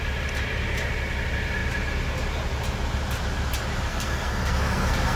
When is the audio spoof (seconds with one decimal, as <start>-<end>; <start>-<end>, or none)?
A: 3.9-5.2

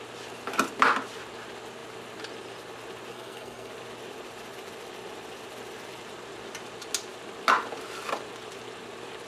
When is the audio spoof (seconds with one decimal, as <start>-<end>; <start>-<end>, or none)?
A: 3.1-3.7

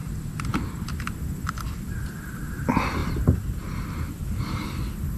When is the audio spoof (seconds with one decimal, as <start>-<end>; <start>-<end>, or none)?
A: none

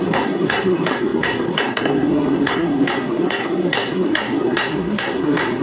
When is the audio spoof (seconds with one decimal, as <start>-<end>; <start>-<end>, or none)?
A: 0.0-5.6

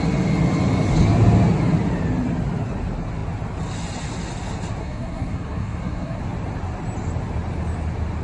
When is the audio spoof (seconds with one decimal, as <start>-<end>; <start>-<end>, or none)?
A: 4.8-6.2

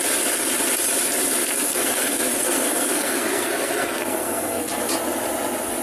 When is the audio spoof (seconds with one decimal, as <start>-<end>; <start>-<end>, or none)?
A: 1.4-4.9

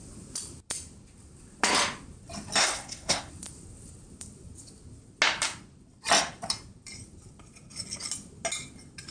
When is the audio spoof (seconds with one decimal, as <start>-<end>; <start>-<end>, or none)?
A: 2.6-3.3

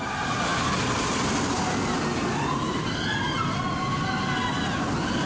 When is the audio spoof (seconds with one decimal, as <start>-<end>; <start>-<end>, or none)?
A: none